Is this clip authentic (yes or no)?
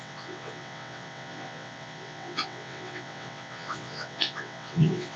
no